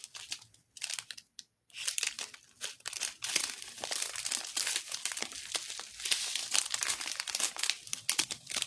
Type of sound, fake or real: real